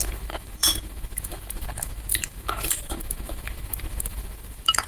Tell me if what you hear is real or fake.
fake